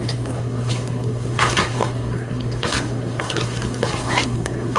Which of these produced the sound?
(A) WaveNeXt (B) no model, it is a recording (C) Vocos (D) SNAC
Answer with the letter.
D